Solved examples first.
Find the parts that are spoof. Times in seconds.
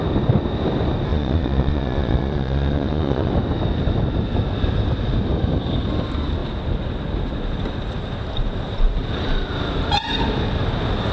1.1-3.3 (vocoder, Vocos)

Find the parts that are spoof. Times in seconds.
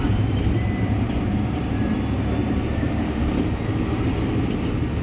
0.0-1.9 (vocoder, BigVGAN v2); 2.4-3.5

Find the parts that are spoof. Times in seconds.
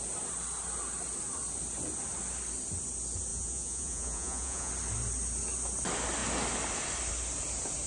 3.3-4.7 (vocoder, Vocos)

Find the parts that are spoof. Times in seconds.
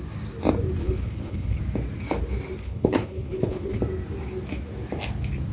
0.8-1.6 (codec, HILCodec); 2.6-3.8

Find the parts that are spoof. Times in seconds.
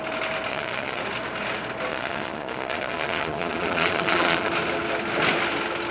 0.5-1.0 (vocoder, Vocos); 1.9-4.5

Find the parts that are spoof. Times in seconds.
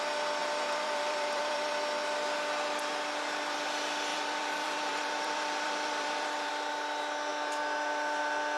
0.4-1.7 (vocoder, BigVGAN v2); 4.1-6.5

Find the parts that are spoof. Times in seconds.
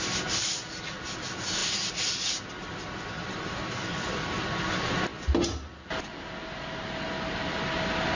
none